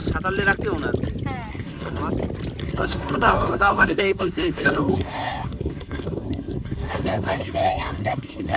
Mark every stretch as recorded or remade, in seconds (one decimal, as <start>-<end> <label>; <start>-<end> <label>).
0.0-1.5 recorded; 1.5-2.0 remade; 2.0-2.6 recorded; 2.6-8.6 remade